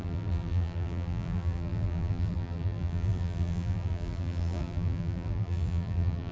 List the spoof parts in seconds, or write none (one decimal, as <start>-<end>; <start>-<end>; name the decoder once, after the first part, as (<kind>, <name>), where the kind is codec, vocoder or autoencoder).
0.0-6.3 (vocoder, BigVGAN v2)